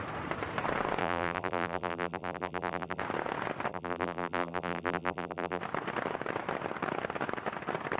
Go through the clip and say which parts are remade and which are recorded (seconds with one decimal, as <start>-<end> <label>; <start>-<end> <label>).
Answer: 0.0-1.0 recorded; 1.0-3.0 remade; 3.0-3.7 recorded; 3.7-5.6 remade; 5.6-8.0 recorded